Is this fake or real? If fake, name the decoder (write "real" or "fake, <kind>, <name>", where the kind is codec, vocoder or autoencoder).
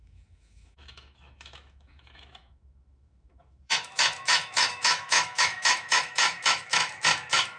fake, autoencoder, DAC-VAE